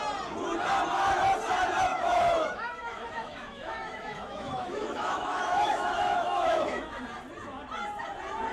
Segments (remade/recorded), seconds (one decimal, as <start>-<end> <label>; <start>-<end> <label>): 0.0-1.9 recorded; 1.9-7.0 remade; 7.0-8.5 recorded